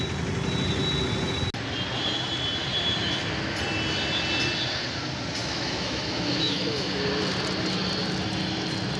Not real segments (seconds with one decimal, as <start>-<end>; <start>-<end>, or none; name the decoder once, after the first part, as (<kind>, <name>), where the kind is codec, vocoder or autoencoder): 5.4-7.0 (autoencoder, DAC-VAE)